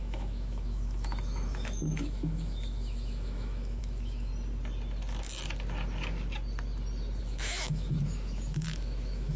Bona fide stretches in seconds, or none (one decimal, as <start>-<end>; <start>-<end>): 4.3-7.2

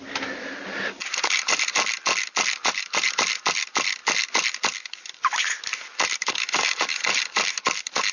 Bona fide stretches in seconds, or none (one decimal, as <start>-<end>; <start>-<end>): 1.0-2.7; 4.0-5.1

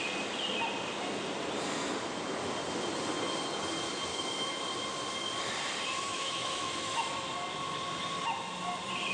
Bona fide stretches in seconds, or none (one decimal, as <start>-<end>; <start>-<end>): 0.0-4.1; 4.6-5.9; 7.0-9.1

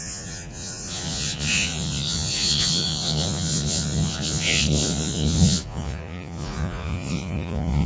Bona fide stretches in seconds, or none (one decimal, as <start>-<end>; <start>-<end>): none

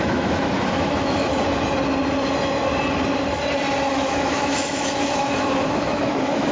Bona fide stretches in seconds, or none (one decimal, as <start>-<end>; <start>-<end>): 1.3-3.9